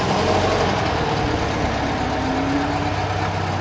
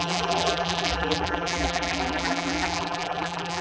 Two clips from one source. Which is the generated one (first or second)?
second